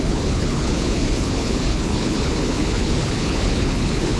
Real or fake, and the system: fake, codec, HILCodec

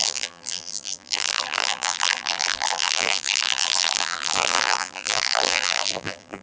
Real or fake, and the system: fake, vocoder, BigVGAN v2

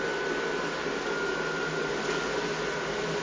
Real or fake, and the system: real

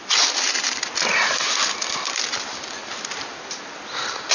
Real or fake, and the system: real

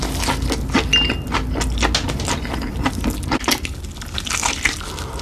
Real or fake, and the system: real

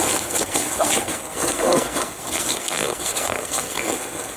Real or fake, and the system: fake, codec, SNAC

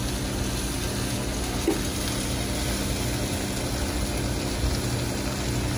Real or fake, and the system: real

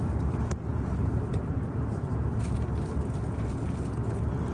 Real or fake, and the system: real